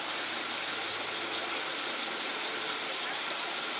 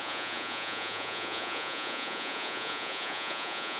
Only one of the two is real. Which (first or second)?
first